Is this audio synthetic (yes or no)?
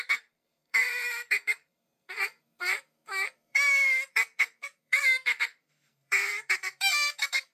yes